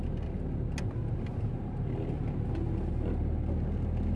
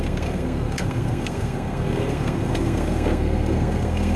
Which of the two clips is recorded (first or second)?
first